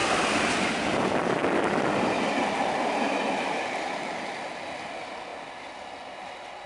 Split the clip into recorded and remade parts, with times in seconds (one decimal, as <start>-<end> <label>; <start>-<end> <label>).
0.0-6.7 recorded